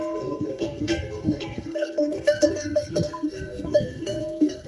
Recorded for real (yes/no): no